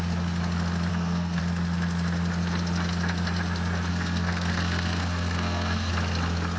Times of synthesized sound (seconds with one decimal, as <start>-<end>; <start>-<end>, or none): 0.9-1.4; 3.9-5.9